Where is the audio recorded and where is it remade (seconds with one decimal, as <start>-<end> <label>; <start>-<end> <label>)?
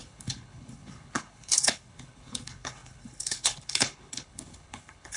0.0-5.2 remade